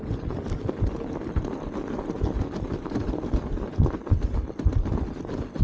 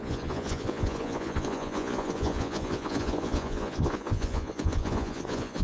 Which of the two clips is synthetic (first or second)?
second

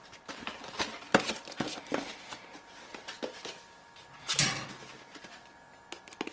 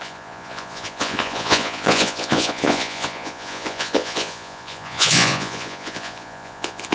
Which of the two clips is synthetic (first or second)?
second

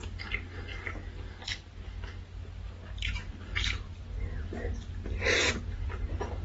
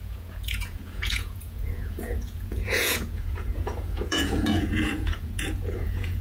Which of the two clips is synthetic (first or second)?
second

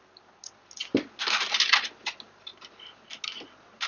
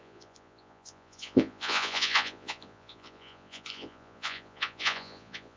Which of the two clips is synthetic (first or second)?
second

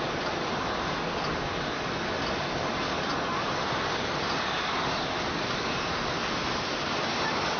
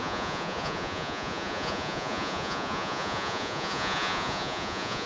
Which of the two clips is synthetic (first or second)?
second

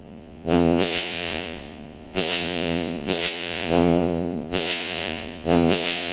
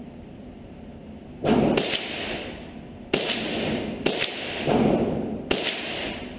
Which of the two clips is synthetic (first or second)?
first